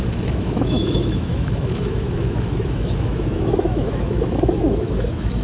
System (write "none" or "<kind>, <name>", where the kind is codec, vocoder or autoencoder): autoencoder, DAC-VAE